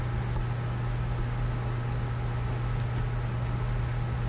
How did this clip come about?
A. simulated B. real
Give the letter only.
B